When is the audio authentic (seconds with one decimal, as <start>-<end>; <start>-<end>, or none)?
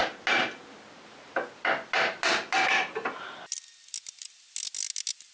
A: 0.0-5.3